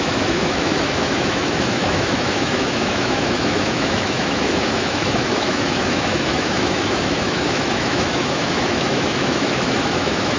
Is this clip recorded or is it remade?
remade